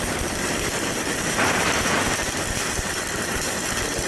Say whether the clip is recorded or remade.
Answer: remade